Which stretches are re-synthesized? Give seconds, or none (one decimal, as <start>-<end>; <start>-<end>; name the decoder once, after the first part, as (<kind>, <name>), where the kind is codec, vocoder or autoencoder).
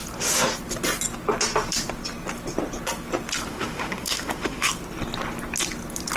3.5-4.7 (autoencoder, DAC-VAE)